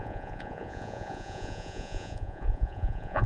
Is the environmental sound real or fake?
fake